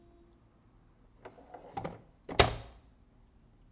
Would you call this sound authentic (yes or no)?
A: yes